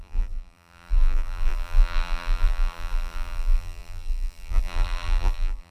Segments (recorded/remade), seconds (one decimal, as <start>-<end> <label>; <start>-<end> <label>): 0.0-5.7 remade